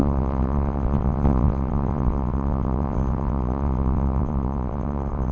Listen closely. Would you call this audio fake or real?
fake